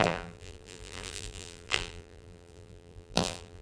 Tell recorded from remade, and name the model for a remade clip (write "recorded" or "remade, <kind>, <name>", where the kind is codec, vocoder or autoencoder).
remade, vocoder, BigVGAN v2